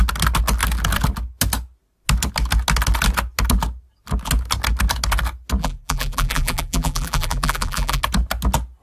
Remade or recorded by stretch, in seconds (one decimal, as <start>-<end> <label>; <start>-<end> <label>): 0.0-5.6 recorded; 5.6-8.0 remade; 8.0-8.8 recorded